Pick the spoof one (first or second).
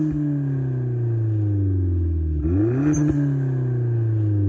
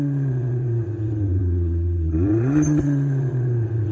second